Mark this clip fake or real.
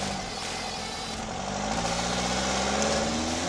real